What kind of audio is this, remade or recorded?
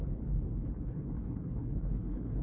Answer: remade